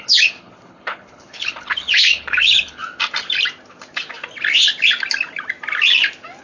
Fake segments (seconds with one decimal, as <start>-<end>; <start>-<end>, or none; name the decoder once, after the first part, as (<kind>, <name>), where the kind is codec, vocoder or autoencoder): 0.0-2.8 (codec, HILCodec)